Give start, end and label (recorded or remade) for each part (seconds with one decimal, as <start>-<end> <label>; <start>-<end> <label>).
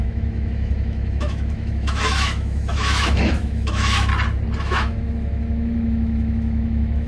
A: 0.0-4.1 remade; 4.1-4.6 recorded; 4.6-7.1 remade